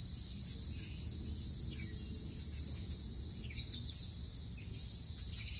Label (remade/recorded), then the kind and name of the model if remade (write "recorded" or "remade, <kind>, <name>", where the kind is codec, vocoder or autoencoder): recorded